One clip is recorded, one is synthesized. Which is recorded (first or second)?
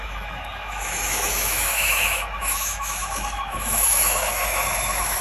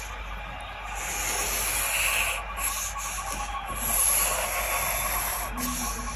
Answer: second